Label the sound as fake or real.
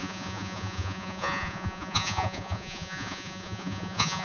fake